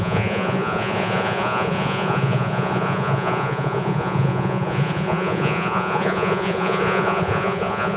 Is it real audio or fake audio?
fake